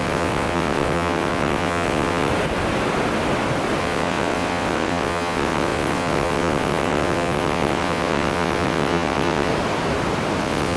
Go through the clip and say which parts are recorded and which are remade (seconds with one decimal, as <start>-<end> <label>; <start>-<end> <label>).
0.0-2.3 remade; 2.3-3.8 recorded; 3.8-9.5 remade; 9.5-10.4 recorded; 10.4-10.8 remade